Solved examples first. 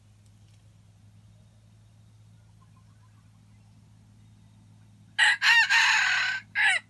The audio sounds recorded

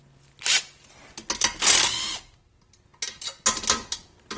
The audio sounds recorded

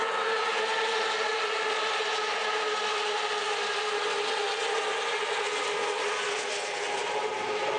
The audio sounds recorded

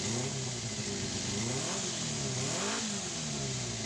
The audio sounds recorded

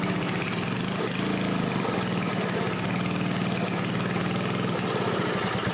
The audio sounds recorded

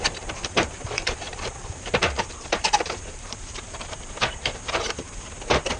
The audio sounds remade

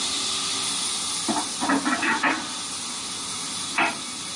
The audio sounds recorded